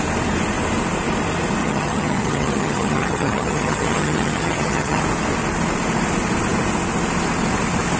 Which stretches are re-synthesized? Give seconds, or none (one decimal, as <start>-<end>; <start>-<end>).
1.6-5.0